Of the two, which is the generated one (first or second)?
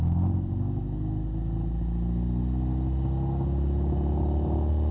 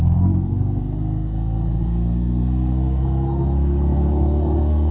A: second